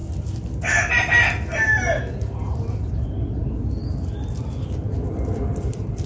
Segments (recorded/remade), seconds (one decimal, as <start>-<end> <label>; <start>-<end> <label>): 0.0-6.1 recorded